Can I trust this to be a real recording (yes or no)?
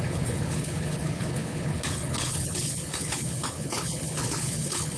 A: no